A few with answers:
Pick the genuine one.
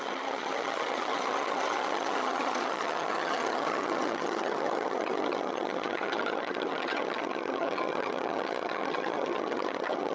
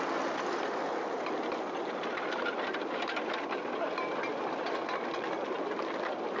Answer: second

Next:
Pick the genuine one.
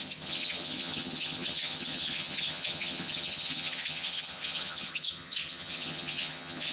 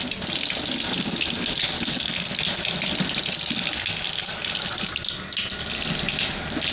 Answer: second